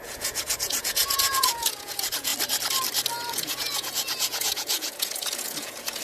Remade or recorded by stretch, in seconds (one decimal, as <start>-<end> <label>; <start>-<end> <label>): 0.0-2.3 remade; 2.3-3.3 recorded; 3.3-6.0 remade